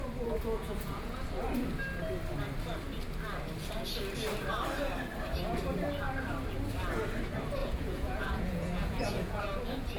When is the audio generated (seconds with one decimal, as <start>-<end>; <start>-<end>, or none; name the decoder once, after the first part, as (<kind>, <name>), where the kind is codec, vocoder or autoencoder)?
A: 0.6-1.2 (vocoder, Vocos); 7.6-9.4